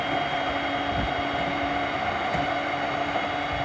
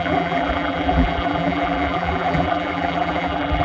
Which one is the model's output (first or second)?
second